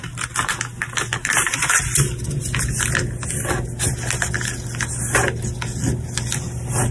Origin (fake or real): real